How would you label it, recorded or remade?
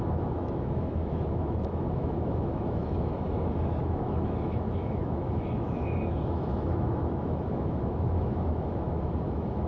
remade